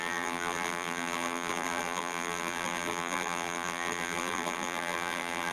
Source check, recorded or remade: remade